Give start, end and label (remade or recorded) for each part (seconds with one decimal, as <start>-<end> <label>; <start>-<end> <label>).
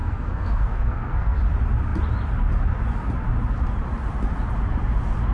0.0-1.4 remade; 1.4-5.3 recorded